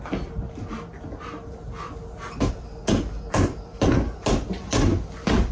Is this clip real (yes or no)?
yes